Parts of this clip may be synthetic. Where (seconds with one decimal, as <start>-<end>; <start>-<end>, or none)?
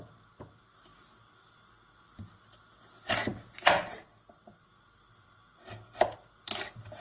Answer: none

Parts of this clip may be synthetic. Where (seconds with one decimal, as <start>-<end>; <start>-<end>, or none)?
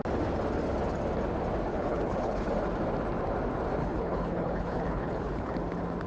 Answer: 1.7-2.5; 3.8-5.5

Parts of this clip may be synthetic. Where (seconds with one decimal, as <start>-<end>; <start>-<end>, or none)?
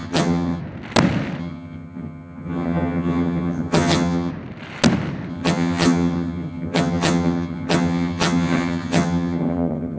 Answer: 0.0-0.6; 1.4-4.3; 5.3-10.0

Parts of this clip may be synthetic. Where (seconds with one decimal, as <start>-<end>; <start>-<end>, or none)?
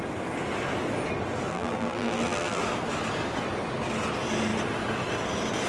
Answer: 1.5-2.6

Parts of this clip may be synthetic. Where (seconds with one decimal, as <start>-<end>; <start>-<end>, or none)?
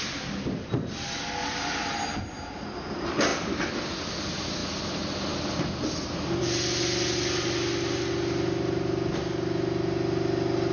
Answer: none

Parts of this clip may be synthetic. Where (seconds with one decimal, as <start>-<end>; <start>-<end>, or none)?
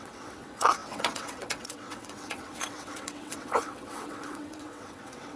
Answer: 0.0-5.4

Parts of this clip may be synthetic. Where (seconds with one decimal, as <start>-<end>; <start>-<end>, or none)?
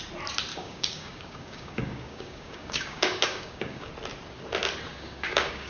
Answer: 0.5-3.9; 4.9-5.7